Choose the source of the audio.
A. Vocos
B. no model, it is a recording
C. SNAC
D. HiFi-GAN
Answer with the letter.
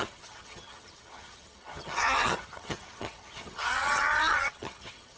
D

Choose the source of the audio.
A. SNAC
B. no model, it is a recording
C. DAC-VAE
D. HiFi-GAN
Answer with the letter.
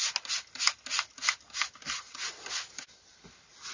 B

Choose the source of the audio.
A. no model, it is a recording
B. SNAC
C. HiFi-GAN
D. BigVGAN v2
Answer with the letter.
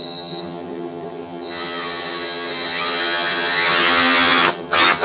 C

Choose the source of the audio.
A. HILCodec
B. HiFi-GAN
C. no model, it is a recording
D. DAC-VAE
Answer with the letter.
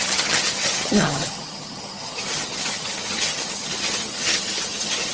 B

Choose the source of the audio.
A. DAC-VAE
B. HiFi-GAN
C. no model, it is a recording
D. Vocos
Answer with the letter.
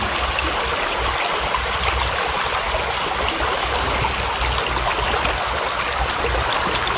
C